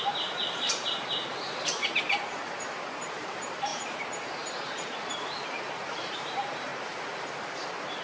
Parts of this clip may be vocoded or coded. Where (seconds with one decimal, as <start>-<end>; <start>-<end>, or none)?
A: 0.0-6.7; 7.5-8.0